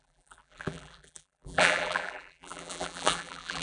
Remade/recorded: remade